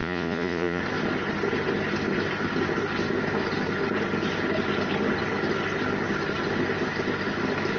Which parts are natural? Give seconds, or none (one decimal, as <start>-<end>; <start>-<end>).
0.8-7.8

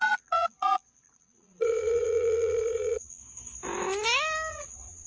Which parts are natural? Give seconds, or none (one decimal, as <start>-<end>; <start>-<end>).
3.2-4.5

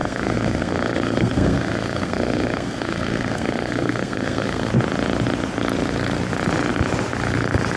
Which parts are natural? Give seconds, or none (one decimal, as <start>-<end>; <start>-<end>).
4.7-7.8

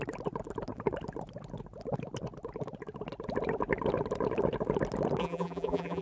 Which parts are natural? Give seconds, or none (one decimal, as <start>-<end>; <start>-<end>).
0.0-5.2

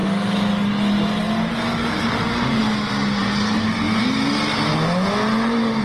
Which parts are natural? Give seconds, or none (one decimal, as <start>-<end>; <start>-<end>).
0.0-5.8

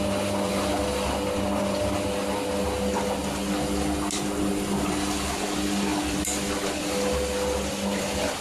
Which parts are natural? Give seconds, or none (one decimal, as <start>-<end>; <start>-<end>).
0.0-8.4

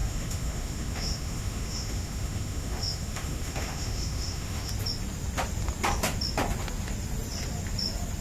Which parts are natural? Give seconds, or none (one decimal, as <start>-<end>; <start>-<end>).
4.7-8.2